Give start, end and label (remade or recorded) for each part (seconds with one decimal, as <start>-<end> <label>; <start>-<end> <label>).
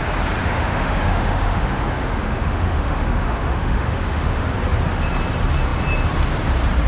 0.0-0.4 recorded; 0.4-4.5 remade; 4.5-6.9 recorded